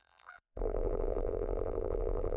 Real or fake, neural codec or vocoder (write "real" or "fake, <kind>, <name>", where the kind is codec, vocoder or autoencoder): fake, vocoder, BigVGAN v2